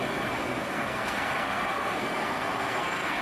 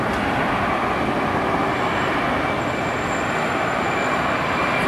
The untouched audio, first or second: second